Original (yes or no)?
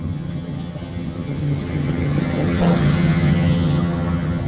no